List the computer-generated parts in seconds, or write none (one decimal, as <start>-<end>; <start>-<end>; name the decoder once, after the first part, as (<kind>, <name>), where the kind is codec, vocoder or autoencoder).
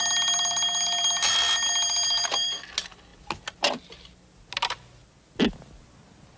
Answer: none